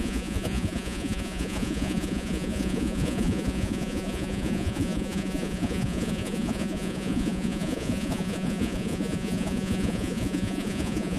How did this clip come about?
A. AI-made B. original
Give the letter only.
A